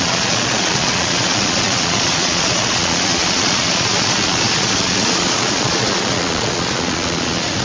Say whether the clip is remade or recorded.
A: remade